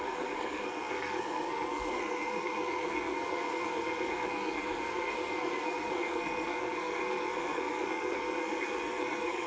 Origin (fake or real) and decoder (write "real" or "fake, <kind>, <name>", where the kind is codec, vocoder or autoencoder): fake, codec, SNAC